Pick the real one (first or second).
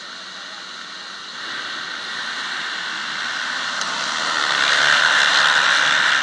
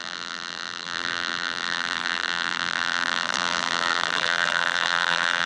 first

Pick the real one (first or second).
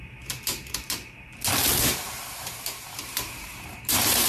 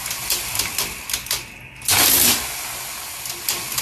second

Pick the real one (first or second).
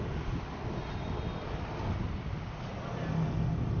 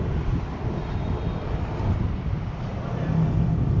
first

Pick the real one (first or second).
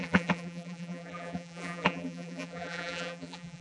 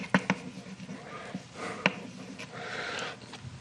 second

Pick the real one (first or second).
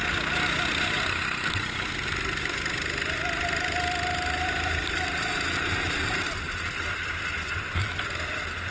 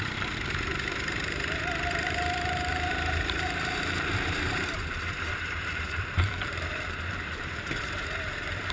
first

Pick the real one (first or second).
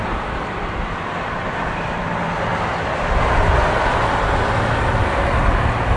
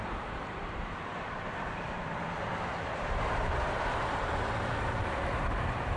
first